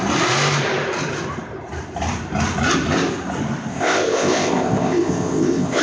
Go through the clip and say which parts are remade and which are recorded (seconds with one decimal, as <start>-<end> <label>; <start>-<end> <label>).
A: 0.0-3.7 recorded; 3.7-5.8 remade